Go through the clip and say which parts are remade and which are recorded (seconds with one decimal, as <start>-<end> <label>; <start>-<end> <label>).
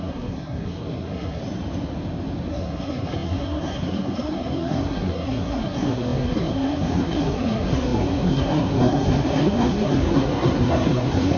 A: 0.0-1.4 remade; 1.4-2.5 recorded; 2.5-11.4 remade